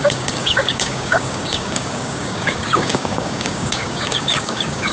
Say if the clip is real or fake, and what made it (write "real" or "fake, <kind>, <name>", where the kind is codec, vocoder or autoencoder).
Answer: fake, codec, DAC